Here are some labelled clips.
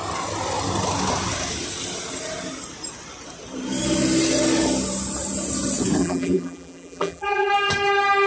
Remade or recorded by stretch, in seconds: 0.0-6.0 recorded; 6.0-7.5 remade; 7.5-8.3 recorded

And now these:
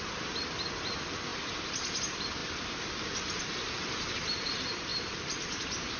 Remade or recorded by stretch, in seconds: 0.0-6.0 recorded

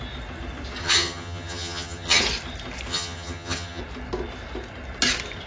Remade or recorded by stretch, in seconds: 0.0-0.8 recorded; 0.8-2.2 remade; 2.2-2.9 recorded; 2.9-3.8 remade; 3.8-5.5 recorded

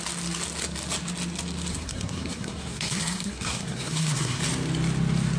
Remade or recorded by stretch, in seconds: 0.0-1.7 recorded; 1.7-4.4 remade; 4.4-5.4 recorded

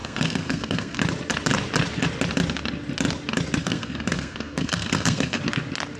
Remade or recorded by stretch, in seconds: 0.0-1.0 remade; 1.0-3.6 recorded; 3.6-5.4 remade; 5.4-6.0 recorded

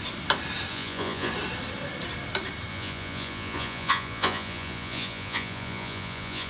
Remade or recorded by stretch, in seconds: 0.0-0.7 recorded; 0.7-1.3 remade; 1.3-2.7 recorded; 2.7-6.5 remade